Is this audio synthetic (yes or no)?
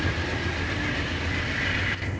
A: no